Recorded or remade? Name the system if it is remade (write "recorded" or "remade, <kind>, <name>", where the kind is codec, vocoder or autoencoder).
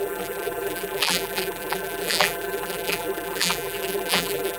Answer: remade, vocoder, BigVGAN v2